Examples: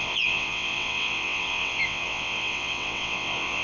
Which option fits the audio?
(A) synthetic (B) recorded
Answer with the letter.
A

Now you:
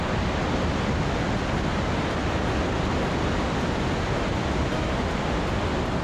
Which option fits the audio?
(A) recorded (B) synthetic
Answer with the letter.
A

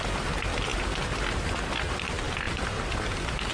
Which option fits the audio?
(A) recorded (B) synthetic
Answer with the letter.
A